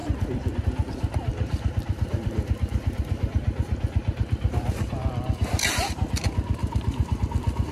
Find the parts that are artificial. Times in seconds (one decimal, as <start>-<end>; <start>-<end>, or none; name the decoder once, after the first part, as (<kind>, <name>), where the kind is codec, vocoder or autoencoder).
0.0-7.7 (vocoder, BigVGAN v2)